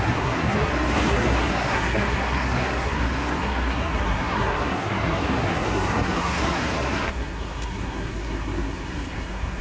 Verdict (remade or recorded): remade